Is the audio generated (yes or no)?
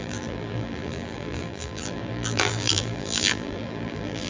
yes